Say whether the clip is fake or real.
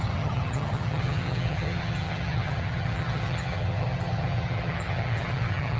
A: fake